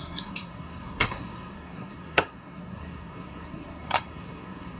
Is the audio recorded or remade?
remade